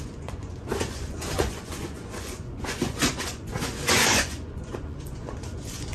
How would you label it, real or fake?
fake